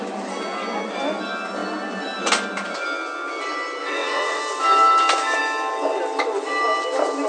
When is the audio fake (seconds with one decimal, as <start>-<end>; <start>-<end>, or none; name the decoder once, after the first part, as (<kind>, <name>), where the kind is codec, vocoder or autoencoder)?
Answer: 3.8-4.4 (vocoder, WaveNeXt)